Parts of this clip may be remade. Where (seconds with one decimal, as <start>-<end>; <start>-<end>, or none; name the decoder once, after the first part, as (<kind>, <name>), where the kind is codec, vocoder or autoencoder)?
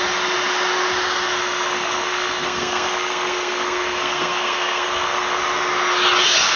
1.4-5.4 (codec, SNAC)